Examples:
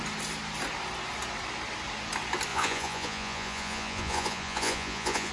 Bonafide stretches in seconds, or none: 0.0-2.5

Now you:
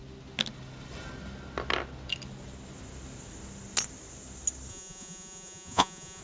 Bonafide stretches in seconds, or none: 0.0-4.7

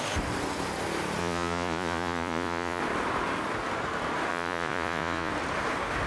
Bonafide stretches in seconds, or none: 0.0-1.2; 2.8-4.3; 5.3-6.1

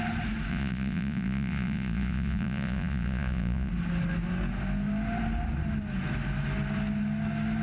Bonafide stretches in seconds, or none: 0.0-0.5; 3.7-7.6

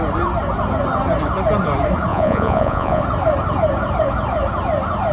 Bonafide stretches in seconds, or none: 0.0-2.1; 3.0-5.1